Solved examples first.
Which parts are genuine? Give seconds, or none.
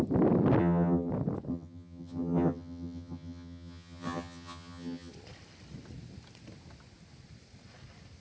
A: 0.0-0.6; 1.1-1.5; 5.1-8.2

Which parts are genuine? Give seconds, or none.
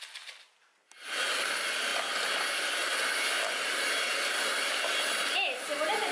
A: 0.0-6.1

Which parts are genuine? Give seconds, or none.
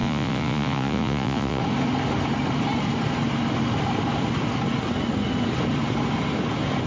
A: 1.6-6.9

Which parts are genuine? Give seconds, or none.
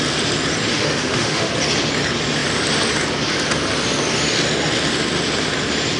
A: 0.0-0.7; 1.5-6.0